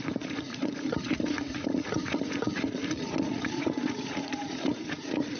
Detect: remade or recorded remade